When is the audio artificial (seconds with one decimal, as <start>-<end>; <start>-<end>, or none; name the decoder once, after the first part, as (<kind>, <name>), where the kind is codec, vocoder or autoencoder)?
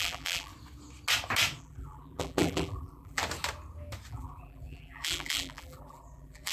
0.0-0.5 (vocoder, BigVGAN v2); 1.6-3.2; 4.1-6.5